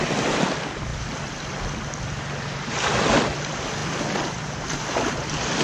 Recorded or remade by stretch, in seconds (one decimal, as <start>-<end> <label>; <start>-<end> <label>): 0.0-5.6 recorded